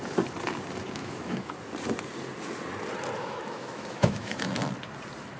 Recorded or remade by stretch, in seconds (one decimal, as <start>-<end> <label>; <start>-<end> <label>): 0.0-1.0 recorded; 1.0-1.5 remade; 1.5-3.2 recorded; 3.2-4.5 remade; 4.5-5.4 recorded